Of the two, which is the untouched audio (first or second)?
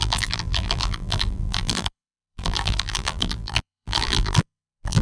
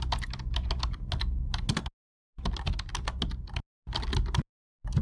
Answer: second